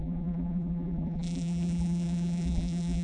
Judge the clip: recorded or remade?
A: remade